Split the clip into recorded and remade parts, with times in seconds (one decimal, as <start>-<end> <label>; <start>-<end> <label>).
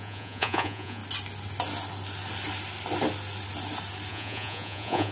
0.0-1.0 remade; 1.0-4.1 recorded; 4.1-5.1 remade